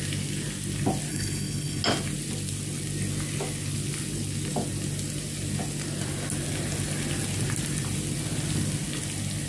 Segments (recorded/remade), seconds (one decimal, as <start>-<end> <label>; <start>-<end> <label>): 0.0-1.1 recorded; 1.1-1.8 remade; 1.8-9.5 recorded

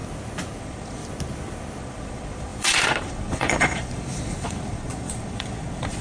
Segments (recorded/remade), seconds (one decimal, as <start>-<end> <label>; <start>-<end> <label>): 0.0-0.6 recorded; 0.6-1.0 remade; 1.0-1.8 recorded; 1.8-6.0 remade

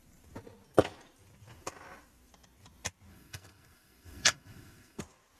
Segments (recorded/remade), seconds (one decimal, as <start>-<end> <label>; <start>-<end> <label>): 0.0-3.1 recorded; 3.1-5.0 remade; 5.0-5.4 recorded

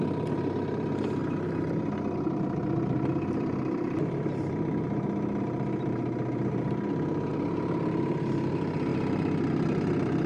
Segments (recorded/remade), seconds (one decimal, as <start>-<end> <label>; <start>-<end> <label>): 0.0-10.3 recorded

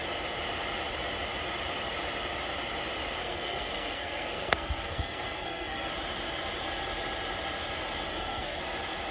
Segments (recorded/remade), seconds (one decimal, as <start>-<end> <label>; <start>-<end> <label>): 0.0-3.2 recorded; 3.2-5.9 remade; 5.9-8.1 recorded; 8.1-8.6 remade; 8.6-9.1 recorded

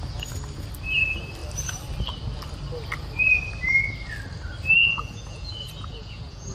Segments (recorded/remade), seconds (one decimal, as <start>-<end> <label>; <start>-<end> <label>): 0.0-4.8 recorded; 4.8-6.5 remade